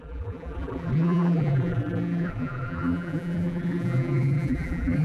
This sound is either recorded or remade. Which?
remade